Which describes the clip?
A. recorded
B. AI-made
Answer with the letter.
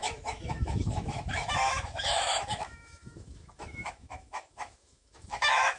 B